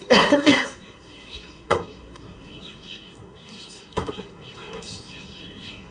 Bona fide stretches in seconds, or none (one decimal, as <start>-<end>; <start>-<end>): none